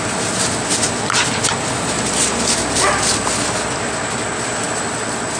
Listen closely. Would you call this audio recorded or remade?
recorded